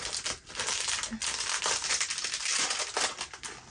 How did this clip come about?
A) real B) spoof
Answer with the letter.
A